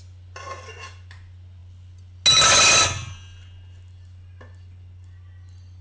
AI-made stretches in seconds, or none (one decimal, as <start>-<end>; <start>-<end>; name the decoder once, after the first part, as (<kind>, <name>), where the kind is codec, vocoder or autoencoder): none